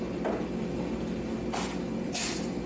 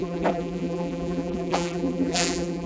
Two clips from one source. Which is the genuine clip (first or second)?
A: first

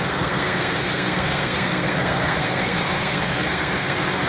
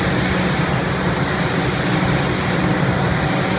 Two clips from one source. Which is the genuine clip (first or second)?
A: second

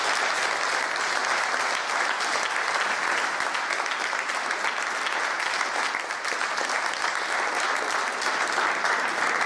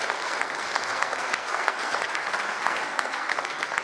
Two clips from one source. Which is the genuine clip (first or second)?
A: first